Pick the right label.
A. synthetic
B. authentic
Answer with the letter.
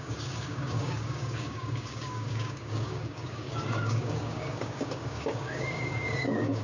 A